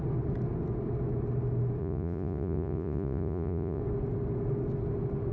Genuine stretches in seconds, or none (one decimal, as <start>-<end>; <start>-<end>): 0.0-1.8; 3.8-5.3